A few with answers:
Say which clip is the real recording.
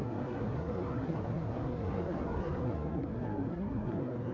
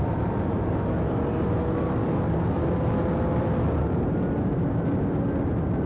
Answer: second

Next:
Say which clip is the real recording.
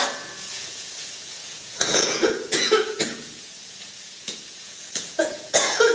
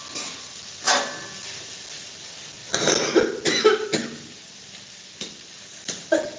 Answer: second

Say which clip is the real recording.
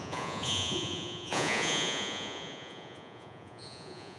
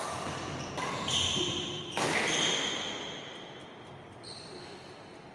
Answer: second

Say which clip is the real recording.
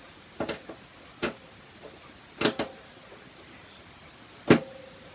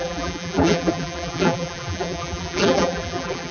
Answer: first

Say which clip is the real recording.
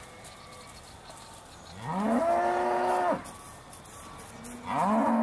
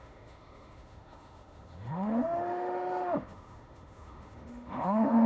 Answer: first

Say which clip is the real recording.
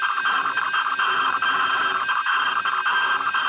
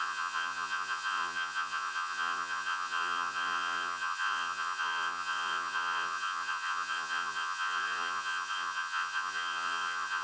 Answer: first